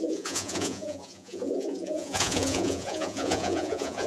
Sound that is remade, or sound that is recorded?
remade